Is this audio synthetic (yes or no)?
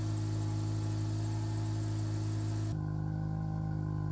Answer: no